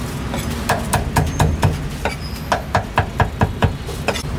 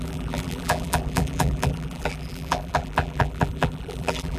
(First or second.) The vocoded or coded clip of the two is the second